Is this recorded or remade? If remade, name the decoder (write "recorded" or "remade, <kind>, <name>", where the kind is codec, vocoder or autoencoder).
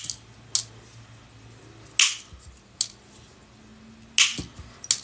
recorded